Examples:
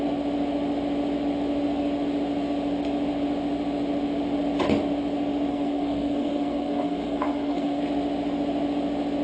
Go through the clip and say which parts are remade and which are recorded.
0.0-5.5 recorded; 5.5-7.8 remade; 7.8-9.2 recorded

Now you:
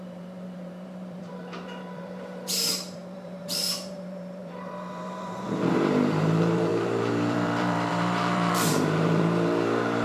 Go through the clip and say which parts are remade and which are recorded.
0.0-10.0 remade

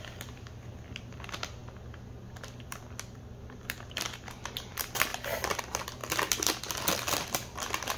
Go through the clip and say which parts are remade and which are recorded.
0.0-1.6 remade; 1.6-2.6 recorded; 2.6-6.0 remade; 6.0-6.6 recorded; 6.6-8.0 remade

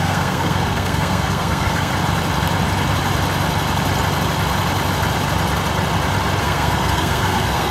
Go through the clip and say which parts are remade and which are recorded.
0.0-1.9 remade; 1.9-6.4 recorded; 6.4-7.7 remade